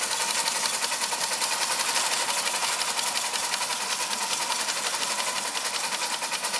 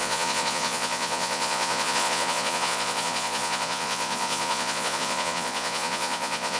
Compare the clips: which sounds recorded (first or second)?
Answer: first